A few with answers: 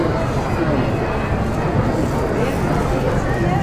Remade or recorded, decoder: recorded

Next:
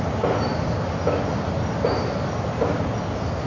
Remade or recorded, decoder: recorded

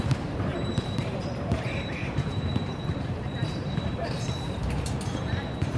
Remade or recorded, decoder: remade, vocoder, BigVGAN v2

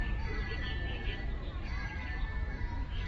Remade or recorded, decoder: recorded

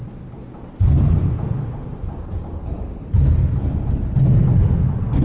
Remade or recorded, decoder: recorded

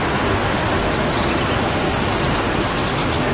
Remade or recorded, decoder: recorded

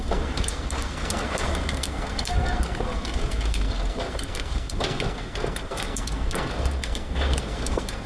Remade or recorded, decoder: remade, codec, SNAC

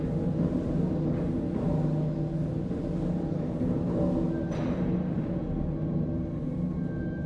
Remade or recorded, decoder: recorded